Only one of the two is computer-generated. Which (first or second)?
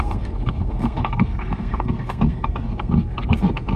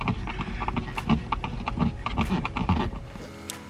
first